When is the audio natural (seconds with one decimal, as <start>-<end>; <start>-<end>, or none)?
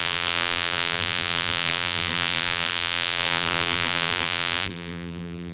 none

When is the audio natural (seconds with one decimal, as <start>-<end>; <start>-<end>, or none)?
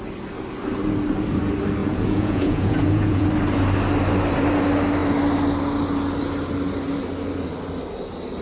0.0-1.8; 3.3-8.4